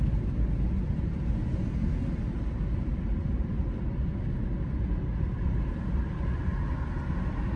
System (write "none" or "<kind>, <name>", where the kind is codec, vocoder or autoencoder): none